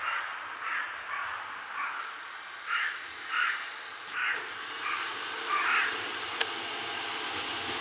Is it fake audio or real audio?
real